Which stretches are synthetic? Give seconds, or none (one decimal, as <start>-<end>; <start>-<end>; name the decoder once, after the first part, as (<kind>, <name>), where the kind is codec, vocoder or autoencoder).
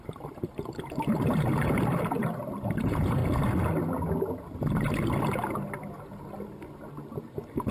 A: 0.0-1.5 (vocoder, BigVGAN v2); 2.5-3.2